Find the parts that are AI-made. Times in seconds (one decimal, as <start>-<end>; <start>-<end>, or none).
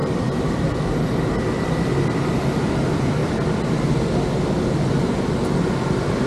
0.0-1.9